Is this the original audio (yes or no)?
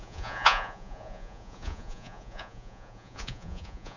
no